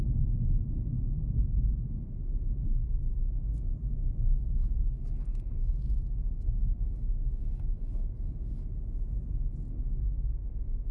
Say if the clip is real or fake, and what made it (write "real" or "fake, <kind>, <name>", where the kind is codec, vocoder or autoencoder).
real